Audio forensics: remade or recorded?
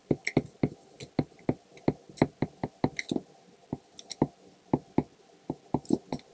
recorded